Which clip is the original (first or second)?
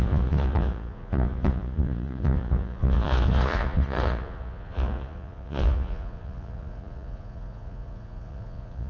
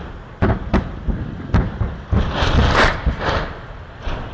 second